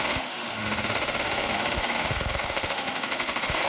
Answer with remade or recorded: remade